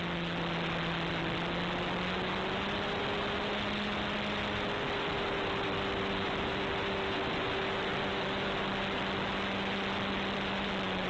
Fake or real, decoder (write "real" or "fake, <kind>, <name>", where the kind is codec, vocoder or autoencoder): real